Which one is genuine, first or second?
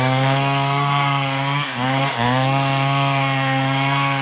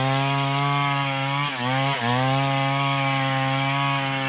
second